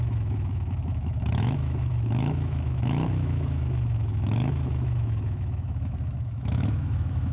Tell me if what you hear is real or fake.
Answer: fake